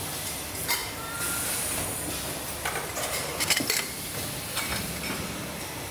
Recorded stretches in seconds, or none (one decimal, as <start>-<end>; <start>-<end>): 0.0-5.9